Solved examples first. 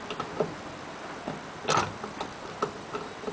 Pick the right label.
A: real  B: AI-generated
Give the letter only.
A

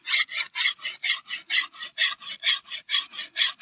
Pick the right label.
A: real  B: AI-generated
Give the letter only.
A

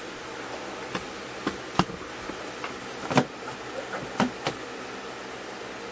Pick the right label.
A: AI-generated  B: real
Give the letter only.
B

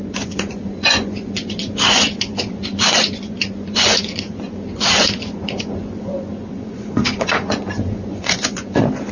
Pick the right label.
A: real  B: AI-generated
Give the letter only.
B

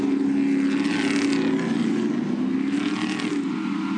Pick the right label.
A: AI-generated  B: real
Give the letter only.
B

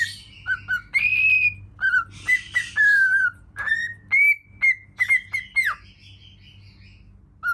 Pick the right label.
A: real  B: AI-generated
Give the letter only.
A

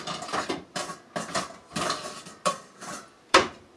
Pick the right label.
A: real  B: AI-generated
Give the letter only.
B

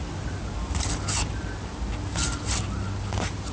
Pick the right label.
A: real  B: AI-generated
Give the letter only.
A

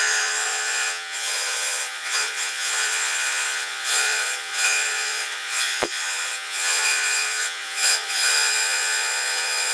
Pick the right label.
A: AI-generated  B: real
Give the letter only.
A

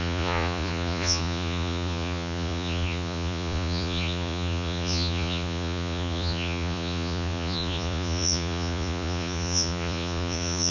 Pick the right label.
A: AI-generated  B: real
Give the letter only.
A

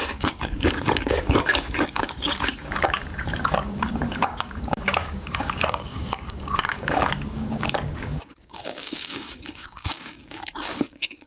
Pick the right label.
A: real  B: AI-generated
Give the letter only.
B